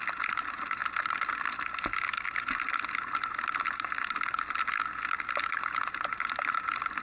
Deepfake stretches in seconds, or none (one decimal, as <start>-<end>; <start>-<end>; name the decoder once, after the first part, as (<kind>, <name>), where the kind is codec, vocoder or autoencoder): none